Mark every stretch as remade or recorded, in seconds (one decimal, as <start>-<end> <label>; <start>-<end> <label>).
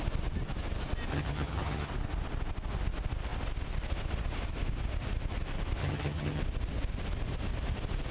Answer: 0.0-1.1 recorded; 1.1-1.9 remade; 1.9-5.8 recorded; 5.8-6.4 remade; 6.4-8.1 recorded